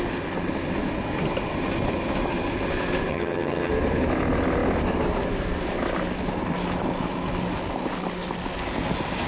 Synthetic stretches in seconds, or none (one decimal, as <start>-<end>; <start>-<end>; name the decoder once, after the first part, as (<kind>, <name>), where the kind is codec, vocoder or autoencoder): 3.1-3.7 (vocoder, HiFi-GAN)